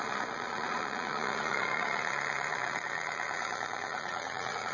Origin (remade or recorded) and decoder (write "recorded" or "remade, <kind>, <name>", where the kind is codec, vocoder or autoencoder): remade, vocoder, Vocos